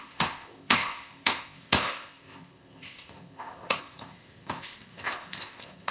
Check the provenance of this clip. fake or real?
fake